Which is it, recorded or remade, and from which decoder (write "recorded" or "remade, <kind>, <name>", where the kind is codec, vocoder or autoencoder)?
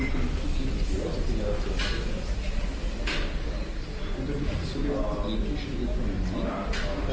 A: recorded